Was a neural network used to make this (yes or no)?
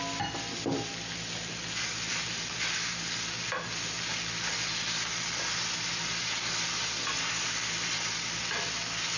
no